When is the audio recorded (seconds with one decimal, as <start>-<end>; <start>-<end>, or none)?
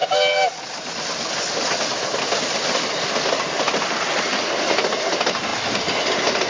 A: 0.0-6.5